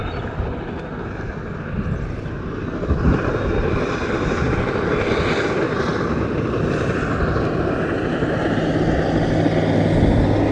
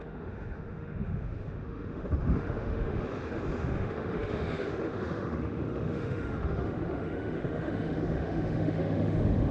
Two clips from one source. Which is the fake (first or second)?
second